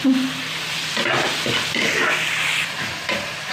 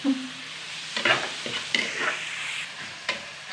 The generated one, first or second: second